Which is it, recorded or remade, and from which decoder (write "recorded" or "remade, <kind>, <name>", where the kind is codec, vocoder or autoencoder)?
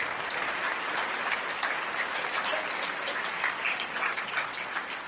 recorded